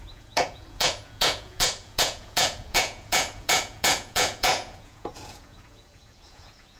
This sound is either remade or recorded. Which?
remade